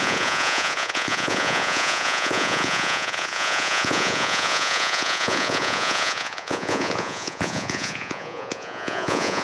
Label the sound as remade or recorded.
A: remade